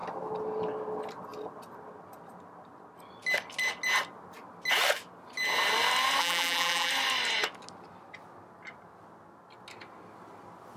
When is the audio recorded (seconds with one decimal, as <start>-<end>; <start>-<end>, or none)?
0.0-6.2; 6.9-10.8